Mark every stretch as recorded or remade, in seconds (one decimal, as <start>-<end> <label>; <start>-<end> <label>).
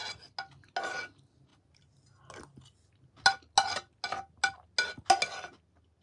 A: 0.0-6.0 recorded